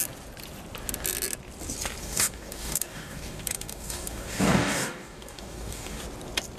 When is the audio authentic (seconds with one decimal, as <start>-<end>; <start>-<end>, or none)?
0.0-2.0; 6.0-6.6